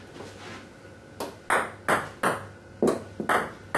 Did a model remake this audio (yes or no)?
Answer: no